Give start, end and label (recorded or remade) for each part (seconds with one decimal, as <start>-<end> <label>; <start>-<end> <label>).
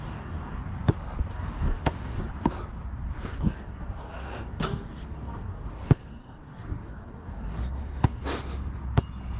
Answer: 0.0-0.6 remade; 0.6-1.3 recorded; 1.3-2.3 remade; 2.3-3.3 recorded; 3.3-8.2 remade; 8.2-9.4 recorded